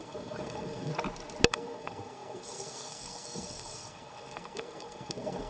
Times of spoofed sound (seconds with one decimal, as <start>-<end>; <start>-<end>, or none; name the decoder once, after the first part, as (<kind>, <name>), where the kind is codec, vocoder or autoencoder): 0.0-0.9 (codec, SNAC); 1.5-5.5